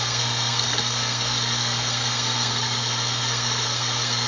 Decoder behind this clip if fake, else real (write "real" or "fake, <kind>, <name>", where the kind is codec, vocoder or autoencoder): fake, codec, SNAC